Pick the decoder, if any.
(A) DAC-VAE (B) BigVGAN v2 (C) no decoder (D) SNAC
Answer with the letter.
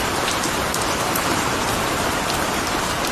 B